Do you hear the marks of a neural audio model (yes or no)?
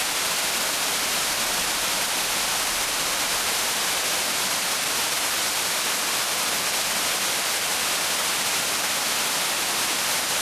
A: no